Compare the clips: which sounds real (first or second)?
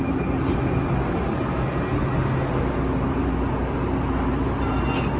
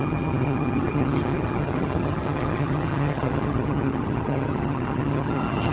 first